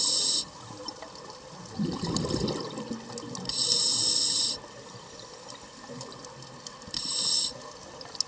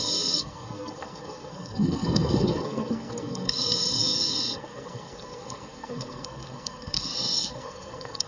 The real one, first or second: first